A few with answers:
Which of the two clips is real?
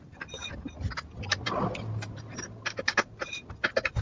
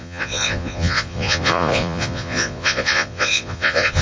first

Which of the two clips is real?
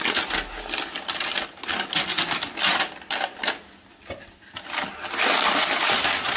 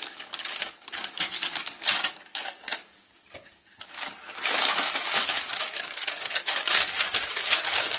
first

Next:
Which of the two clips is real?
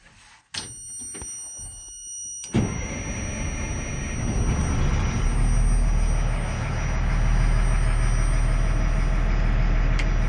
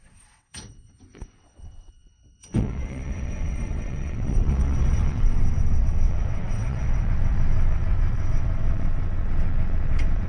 first